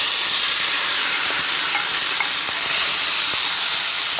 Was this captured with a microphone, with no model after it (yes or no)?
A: yes